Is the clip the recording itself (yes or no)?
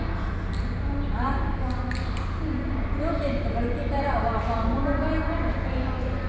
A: yes